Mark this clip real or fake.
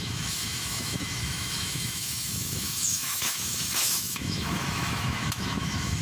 fake